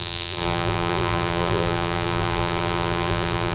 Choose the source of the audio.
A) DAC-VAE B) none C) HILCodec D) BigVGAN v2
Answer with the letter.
D